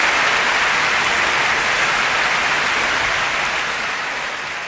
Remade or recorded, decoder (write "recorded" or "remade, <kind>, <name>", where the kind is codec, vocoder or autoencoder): recorded